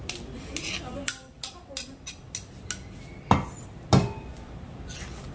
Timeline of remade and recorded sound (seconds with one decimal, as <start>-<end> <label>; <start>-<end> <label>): 0.0-5.3 recorded